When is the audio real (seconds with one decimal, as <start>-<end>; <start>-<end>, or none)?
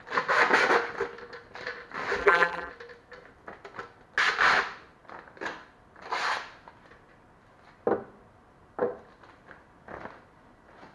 0.0-2.2; 2.7-10.9